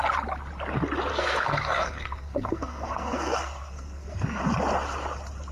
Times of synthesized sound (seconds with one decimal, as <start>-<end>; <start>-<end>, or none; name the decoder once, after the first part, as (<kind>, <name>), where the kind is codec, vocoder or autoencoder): 1.1-4.4 (codec, SNAC)